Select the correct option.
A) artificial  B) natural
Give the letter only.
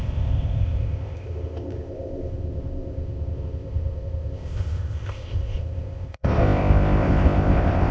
A